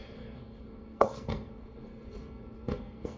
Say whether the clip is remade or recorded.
remade